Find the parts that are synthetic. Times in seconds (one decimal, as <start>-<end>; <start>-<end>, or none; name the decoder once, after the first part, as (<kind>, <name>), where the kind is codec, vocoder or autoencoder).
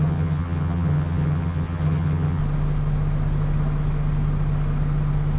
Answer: 0.0-2.4 (vocoder, HiFi-GAN)